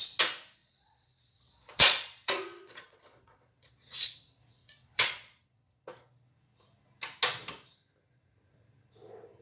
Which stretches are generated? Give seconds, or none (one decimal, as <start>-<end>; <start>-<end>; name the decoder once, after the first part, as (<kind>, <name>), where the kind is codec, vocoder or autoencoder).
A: 0.6-4.1 (vocoder, Vocos); 4.6-5.8